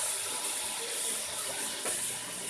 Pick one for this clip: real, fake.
real